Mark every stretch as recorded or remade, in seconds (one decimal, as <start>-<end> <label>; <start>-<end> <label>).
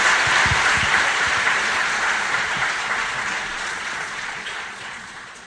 0.0-3.5 recorded; 3.5-5.5 remade